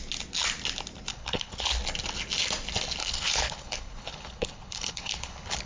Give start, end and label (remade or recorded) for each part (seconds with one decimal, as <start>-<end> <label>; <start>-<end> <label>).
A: 0.0-1.1 recorded; 1.1-1.8 remade; 1.8-3.0 recorded; 3.0-5.7 remade